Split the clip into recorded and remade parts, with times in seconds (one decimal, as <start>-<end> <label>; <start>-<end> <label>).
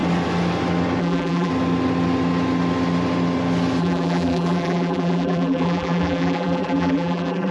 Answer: 0.0-1.0 recorded; 1.0-1.5 remade; 1.5-3.8 recorded; 3.8-7.5 remade